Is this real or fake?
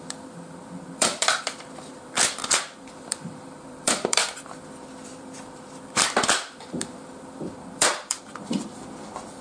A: fake